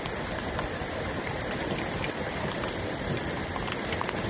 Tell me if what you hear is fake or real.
real